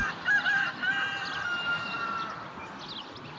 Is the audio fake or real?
real